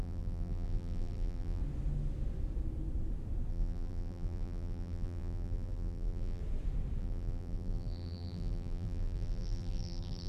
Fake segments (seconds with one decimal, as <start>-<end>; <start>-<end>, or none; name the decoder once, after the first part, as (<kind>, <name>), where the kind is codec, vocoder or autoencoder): 0.0-1.6 (vocoder, BigVGAN v2); 3.5-6.4; 7.0-10.3